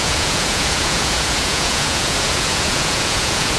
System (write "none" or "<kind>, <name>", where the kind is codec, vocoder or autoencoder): vocoder, Vocos